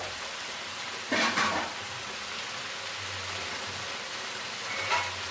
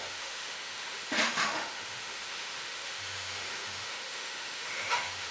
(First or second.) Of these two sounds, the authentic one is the first